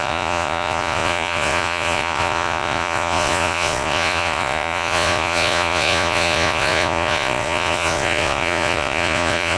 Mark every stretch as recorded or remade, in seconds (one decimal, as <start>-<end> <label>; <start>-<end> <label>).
0.0-9.6 remade